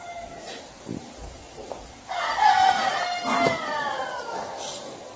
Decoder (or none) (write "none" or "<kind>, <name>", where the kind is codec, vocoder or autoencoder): none